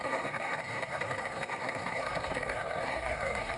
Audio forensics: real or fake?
fake